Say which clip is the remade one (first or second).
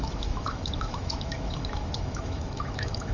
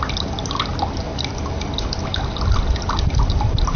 first